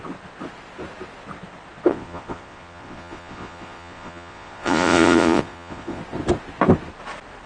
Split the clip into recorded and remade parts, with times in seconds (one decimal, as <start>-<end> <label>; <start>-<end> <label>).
0.0-1.9 recorded; 1.9-6.0 remade; 6.0-7.5 recorded